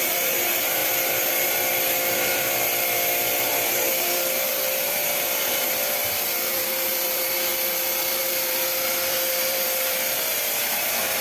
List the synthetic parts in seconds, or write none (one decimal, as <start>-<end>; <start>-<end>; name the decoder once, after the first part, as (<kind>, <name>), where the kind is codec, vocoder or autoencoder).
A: 0.0-7.5 (vocoder, BigVGAN v2); 8.2-11.2